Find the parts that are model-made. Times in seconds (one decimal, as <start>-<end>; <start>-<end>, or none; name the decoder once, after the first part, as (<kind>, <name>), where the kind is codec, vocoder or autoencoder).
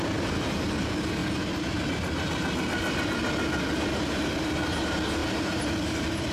none